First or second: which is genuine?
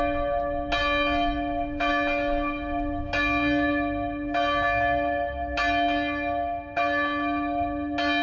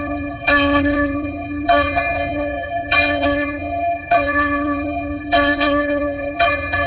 first